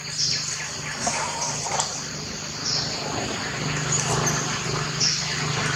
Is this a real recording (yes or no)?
yes